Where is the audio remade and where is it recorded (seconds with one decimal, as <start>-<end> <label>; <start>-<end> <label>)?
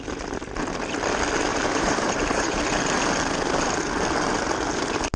0.0-1.5 recorded; 1.5-2.6 remade; 2.6-5.2 recorded